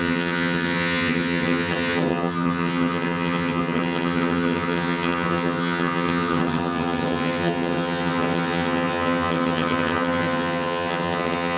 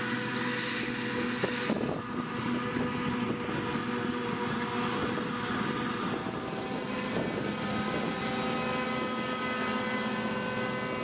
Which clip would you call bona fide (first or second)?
second